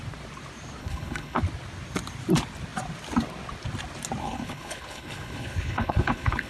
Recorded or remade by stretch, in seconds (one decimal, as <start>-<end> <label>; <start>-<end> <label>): 0.0-0.8 recorded; 0.8-1.4 remade; 1.4-4.2 recorded; 4.2-6.5 remade